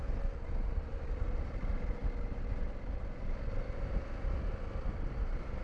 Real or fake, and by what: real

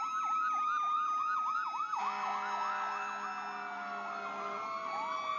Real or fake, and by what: real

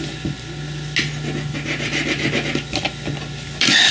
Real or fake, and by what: real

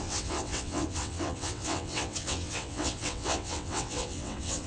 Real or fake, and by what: fake, vocoder, WaveNeXt